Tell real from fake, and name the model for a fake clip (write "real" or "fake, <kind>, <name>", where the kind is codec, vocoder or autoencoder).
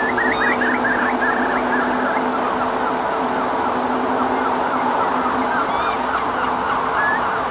real